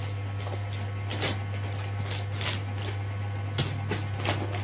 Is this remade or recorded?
recorded